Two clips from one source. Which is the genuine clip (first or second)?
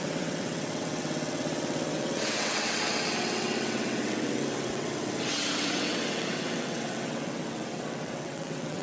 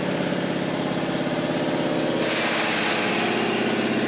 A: second